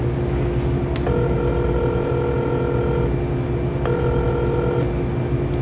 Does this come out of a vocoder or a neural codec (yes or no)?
no